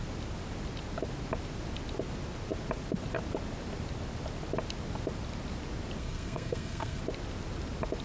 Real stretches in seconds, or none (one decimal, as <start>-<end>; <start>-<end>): 0.0-6.0; 7.0-8.0